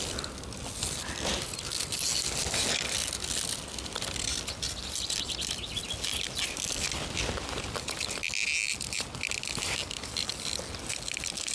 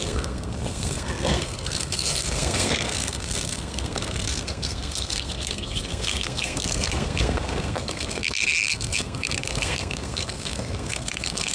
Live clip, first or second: first